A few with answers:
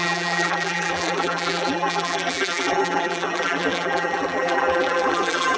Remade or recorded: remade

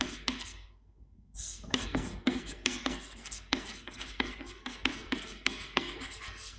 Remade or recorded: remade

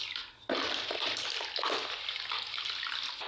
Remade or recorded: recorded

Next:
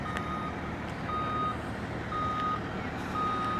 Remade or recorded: recorded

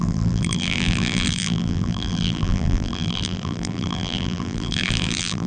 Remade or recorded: remade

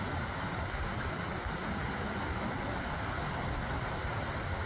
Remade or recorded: recorded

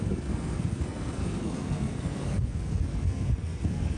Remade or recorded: remade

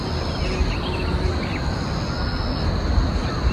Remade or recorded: recorded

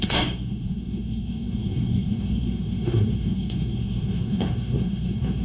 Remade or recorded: remade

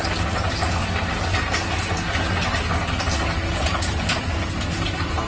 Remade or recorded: recorded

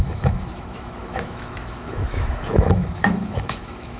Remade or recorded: remade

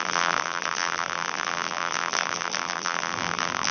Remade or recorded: remade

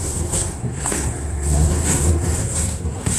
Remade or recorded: remade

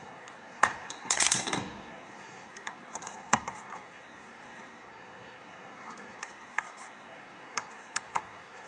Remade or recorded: remade